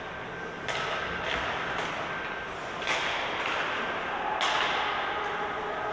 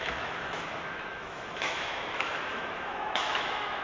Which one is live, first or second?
first